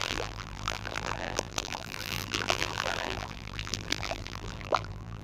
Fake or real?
fake